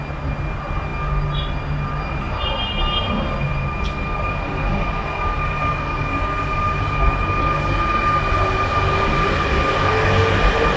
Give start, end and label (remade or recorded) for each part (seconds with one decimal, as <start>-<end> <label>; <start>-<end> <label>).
0.0-10.8 recorded